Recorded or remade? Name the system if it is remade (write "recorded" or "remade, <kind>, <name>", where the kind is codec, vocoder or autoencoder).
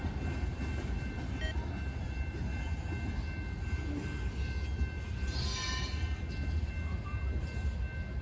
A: recorded